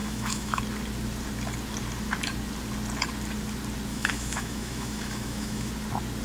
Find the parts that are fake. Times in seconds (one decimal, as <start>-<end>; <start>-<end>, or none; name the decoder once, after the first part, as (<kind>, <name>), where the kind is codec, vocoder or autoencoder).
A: 0.0-0.6 (autoencoder, DAC-VAE); 3.9-5.7